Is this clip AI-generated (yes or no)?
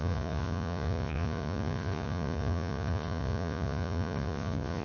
yes